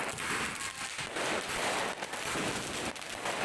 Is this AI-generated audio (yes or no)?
no